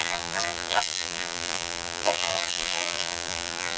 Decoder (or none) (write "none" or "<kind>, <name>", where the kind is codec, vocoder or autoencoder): vocoder, BigVGAN v2